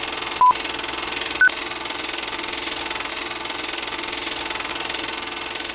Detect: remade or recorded recorded